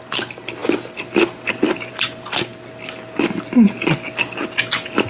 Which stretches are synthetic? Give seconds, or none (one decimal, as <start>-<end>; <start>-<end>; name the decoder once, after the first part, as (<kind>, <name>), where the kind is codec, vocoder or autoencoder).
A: none